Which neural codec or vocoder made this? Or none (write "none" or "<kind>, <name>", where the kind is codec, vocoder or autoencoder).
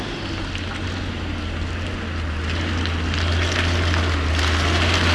none